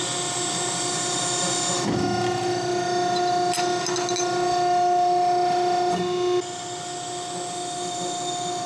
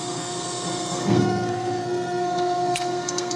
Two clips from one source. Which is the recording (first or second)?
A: first